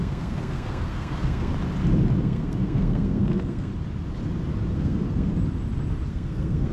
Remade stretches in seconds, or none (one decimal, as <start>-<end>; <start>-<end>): 0.0-1.5; 2.2-3.7; 4.7-5.3; 6.1-6.7